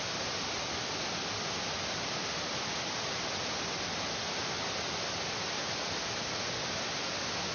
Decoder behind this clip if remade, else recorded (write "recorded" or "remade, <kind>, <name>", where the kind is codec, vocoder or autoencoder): recorded